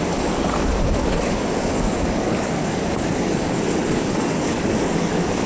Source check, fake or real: fake